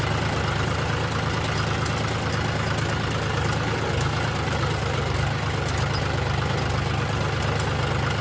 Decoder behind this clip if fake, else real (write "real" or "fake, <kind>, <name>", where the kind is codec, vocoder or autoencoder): real